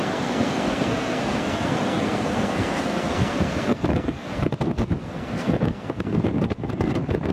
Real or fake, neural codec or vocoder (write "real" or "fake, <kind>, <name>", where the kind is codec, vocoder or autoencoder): fake, codec, SNAC